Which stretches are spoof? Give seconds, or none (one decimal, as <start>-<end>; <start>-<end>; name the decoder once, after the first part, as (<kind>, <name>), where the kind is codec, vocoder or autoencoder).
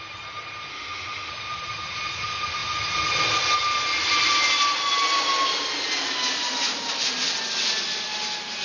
0.7-1.3 (autoencoder, DAC-VAE)